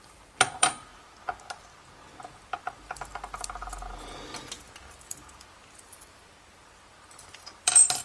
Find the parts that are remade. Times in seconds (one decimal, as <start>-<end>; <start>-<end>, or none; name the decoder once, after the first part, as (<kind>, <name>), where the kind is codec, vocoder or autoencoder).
0.0-0.9 (vocoder, BigVGAN v2); 2.3-3.1; 4.6-8.0